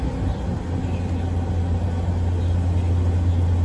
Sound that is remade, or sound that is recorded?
recorded